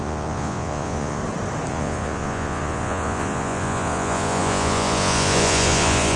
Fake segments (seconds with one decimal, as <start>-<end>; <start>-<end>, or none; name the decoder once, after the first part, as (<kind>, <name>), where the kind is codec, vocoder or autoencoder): 0.0-1.2 (vocoder, Vocos); 1.7-6.2